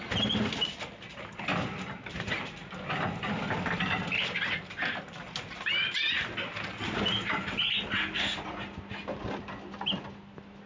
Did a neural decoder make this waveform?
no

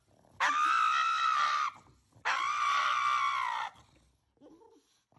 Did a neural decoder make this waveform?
no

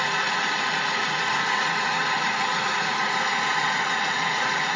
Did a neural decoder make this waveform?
yes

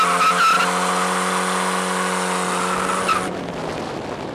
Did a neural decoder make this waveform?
no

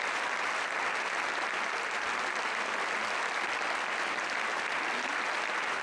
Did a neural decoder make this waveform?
no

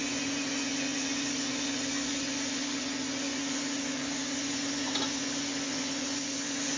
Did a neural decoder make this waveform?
yes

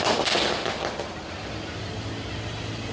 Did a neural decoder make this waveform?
no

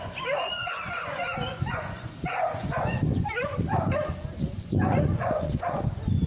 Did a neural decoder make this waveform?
yes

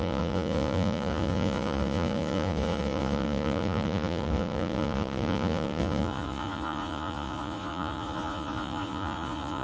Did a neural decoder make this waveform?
yes